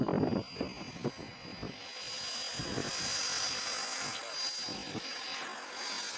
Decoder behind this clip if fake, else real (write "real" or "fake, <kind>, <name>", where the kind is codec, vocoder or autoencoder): real